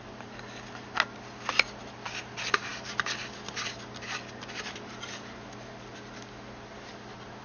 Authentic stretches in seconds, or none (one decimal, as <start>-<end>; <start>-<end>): 0.0-7.4